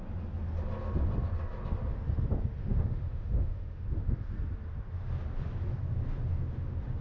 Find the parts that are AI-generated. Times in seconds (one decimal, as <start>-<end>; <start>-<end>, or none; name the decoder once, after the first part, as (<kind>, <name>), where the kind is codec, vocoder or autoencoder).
2.6-4.3 (autoencoder, DAC-VAE); 6.3-7.0